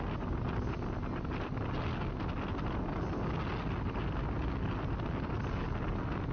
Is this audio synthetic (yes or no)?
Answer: no